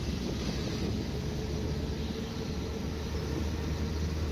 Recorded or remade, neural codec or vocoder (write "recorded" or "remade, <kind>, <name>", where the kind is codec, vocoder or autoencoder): recorded